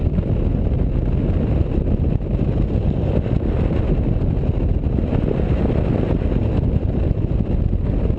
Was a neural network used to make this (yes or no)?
no